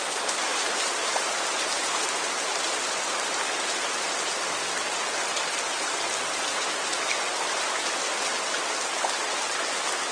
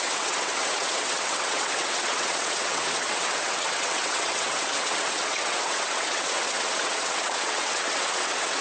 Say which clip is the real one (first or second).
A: first